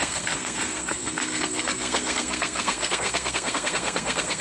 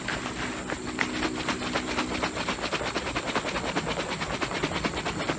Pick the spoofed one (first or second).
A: first